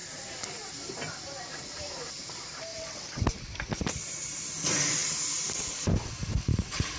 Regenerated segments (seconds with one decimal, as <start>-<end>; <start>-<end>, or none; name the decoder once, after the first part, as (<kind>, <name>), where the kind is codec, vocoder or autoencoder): 2.7-3.2 (vocoder, WaveNeXt)